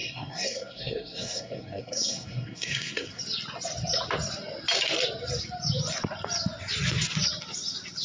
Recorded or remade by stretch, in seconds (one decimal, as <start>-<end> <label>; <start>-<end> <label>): 0.0-3.2 remade; 3.2-8.0 recorded